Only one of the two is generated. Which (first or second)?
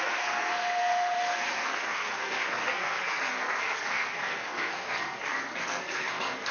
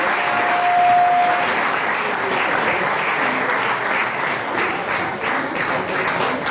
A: first